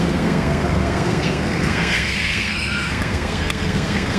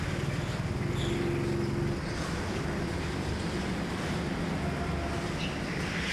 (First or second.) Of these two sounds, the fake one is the first